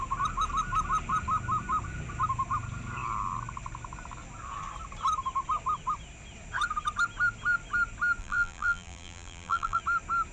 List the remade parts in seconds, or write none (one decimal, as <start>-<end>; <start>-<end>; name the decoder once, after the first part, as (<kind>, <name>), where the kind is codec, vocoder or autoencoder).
8.2-9.8 (vocoder, BigVGAN v2)